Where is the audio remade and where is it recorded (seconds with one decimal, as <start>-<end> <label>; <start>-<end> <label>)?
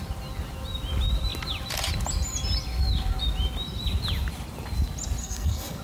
0.0-5.2 recorded; 5.2-5.8 remade